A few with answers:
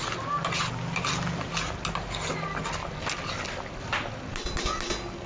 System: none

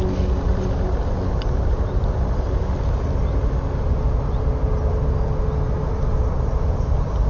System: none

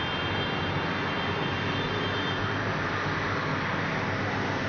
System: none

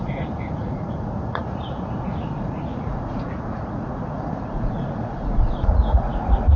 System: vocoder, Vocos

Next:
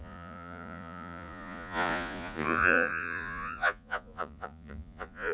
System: vocoder, Vocos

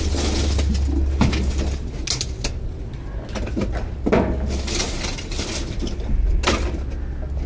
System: none